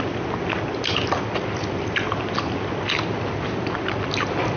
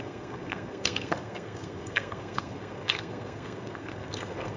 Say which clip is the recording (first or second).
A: first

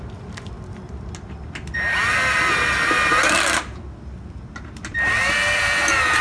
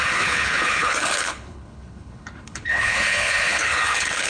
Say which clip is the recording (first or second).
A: first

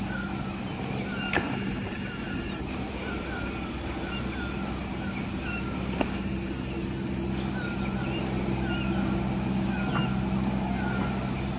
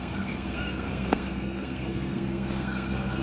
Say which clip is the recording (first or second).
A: first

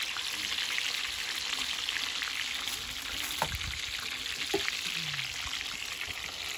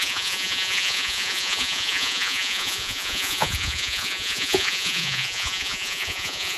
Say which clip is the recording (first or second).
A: first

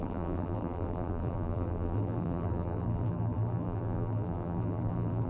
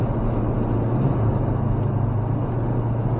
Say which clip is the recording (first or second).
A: second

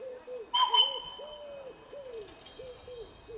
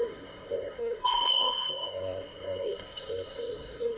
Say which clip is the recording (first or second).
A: first